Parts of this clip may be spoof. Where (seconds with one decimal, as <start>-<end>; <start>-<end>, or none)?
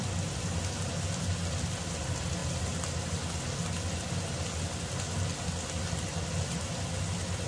none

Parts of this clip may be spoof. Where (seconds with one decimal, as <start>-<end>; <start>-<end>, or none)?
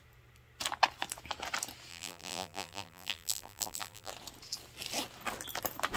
1.9-4.1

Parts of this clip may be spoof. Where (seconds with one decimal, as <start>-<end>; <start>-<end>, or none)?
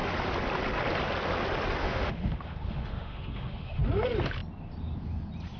1.8-3.8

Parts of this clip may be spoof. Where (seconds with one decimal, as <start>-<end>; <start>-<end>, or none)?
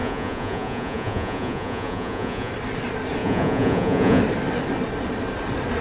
0.0-2.5; 3.2-4.2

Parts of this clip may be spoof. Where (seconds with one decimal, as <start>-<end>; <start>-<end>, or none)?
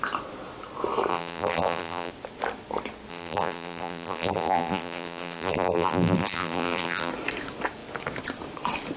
1.1-2.1; 3.1-7.1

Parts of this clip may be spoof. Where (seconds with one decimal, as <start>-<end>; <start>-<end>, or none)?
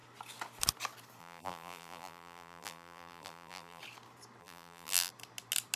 1.2-3.8; 4.4-5.1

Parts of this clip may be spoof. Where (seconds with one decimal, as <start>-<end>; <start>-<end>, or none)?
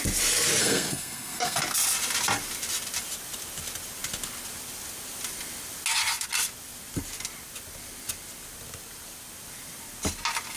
0.6-1.6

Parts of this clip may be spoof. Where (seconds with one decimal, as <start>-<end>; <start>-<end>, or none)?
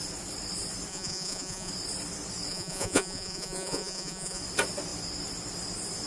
0.9-1.7; 2.5-4.4